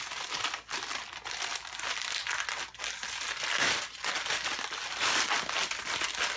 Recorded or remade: recorded